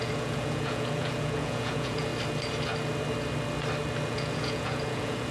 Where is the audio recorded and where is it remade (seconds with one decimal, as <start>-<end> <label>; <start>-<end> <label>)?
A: 0.0-2.1 remade; 2.1-4.1 recorded; 4.1-5.3 remade